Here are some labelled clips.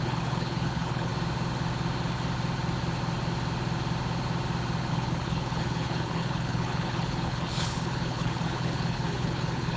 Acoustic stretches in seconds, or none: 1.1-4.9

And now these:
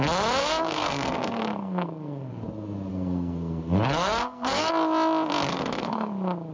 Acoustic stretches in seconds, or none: 0.0-0.4; 2.3-2.9; 4.7-5.5; 6.1-6.5

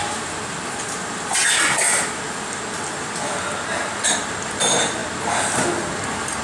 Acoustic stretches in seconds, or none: 0.5-1.4; 2.6-6.4

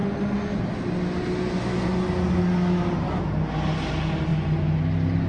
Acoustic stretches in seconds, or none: 0.0-5.3

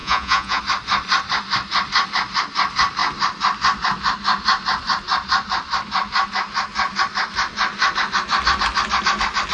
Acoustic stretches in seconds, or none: 0.6-9.5

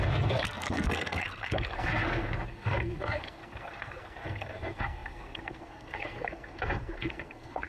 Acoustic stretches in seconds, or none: none

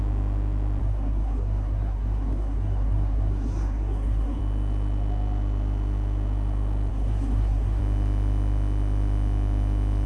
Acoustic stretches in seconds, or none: 0.0-0.8; 4.4-6.9; 7.8-10.1

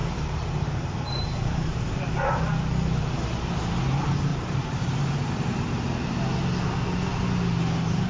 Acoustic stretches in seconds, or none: 2.4-4.3; 5.3-8.1